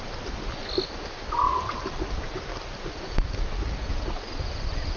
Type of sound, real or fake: real